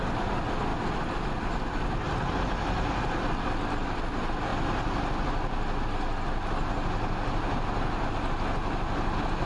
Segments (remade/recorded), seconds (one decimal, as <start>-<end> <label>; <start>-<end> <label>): 0.0-9.5 recorded